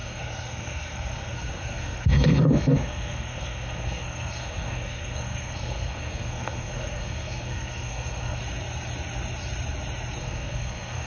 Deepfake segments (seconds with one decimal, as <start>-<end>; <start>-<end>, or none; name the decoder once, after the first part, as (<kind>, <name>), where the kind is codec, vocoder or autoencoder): 0.0-8.4 (codec, SNAC); 10.2-11.1